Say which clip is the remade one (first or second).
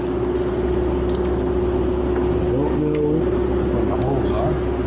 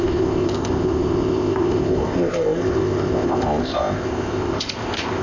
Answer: second